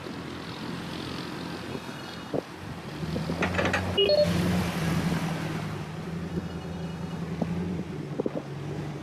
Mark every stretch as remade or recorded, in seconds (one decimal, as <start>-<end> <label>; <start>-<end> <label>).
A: 0.0-1.7 recorded; 1.7-2.3 remade; 2.3-6.3 recorded; 6.3-7.2 remade; 7.2-9.0 recorded